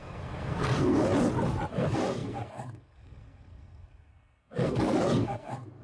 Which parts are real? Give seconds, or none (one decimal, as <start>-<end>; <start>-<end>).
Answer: 1.1-1.7